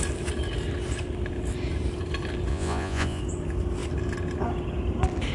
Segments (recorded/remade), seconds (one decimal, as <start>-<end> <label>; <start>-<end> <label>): 0.0-2.5 recorded; 2.5-3.2 remade; 3.2-5.3 recorded